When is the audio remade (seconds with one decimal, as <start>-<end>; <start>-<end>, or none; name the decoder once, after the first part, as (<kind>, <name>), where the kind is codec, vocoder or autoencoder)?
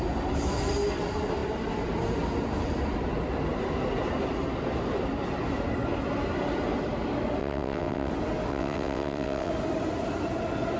7.4-8.1 (vocoder, WaveNeXt); 8.5-9.5